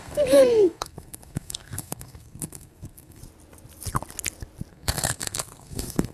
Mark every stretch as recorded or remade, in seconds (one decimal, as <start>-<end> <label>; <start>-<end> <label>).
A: 0.0-3.2 remade; 3.2-4.7 recorded; 4.7-6.1 remade